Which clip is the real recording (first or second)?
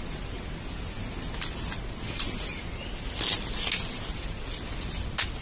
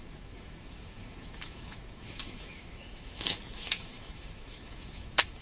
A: first